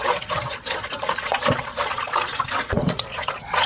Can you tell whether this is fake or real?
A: fake